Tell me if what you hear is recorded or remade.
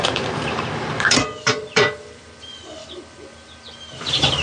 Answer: remade